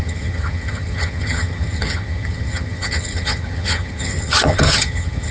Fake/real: fake